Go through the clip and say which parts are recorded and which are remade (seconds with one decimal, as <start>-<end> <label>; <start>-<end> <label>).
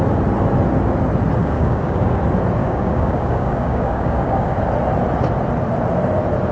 0.0-1.4 recorded; 1.4-2.2 remade; 2.2-2.6 recorded; 2.6-4.6 remade; 4.6-6.5 recorded